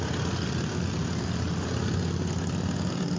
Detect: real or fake real